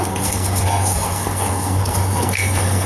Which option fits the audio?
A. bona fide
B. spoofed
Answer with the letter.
B